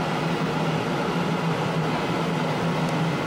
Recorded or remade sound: recorded